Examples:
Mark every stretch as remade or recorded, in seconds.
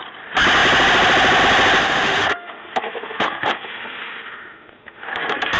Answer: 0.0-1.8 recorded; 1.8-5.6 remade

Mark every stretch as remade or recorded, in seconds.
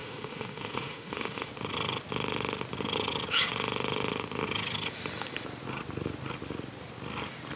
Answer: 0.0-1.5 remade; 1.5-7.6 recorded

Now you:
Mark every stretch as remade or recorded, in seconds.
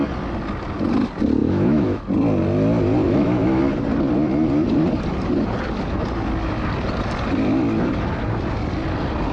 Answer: 0.0-1.4 recorded; 1.4-2.0 remade; 2.0-3.0 recorded; 3.0-3.6 remade; 3.6-9.3 recorded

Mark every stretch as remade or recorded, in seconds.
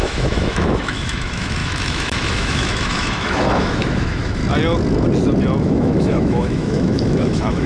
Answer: 0.0-4.4 remade; 4.4-5.6 recorded; 5.6-7.7 remade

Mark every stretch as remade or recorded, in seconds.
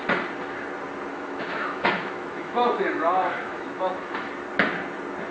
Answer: 0.0-1.1 recorded; 1.1-4.3 remade; 4.3-5.3 recorded